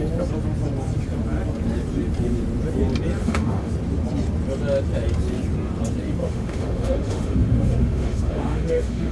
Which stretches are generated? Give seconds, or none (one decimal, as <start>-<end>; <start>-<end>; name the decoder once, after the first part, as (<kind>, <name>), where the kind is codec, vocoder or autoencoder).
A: 3.2-3.7 (autoencoder, DAC-VAE); 6.2-9.1